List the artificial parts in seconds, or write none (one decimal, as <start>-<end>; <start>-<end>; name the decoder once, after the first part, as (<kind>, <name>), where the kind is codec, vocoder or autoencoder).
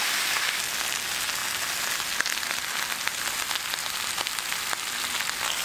none